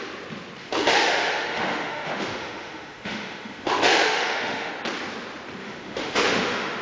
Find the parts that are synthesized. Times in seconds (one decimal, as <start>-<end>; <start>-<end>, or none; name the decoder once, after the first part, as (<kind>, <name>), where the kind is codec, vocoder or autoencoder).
0.6-4.7 (autoencoder, DAC-VAE); 5.6-6.8